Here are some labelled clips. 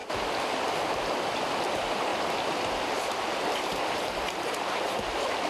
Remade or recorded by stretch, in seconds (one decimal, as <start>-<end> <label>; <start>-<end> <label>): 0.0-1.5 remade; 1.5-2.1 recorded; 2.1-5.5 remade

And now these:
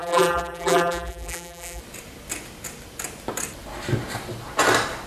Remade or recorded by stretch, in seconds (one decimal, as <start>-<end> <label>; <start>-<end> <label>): 0.0-1.8 remade; 1.8-5.1 recorded

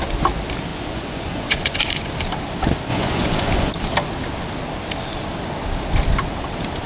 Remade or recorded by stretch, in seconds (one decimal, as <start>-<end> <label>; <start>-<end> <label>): 0.0-0.7 recorded; 0.7-2.1 remade; 2.1-2.9 recorded; 2.9-3.7 remade; 3.7-6.9 recorded

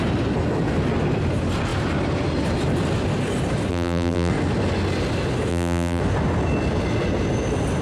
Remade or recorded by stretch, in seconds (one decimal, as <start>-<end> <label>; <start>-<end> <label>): 0.0-3.7 recorded; 3.7-4.3 remade; 4.3-5.5 recorded; 5.5-6.0 remade; 6.0-7.8 recorded

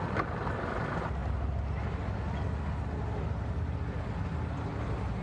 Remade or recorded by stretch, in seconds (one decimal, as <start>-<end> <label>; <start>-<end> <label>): 0.0-5.2 recorded